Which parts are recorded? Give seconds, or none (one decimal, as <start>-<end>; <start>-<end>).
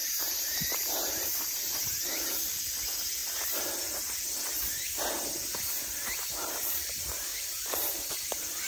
3.2-5.9